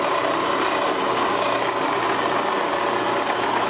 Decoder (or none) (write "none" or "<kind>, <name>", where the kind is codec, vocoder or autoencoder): none